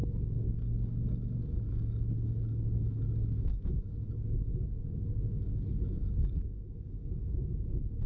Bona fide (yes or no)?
no